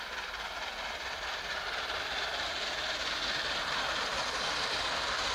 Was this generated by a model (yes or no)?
no